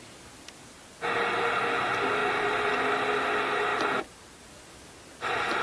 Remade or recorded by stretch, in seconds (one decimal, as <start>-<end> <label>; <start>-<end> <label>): 0.0-2.2 recorded; 2.2-2.8 remade; 2.8-3.7 recorded; 3.7-4.5 remade; 4.5-5.6 recorded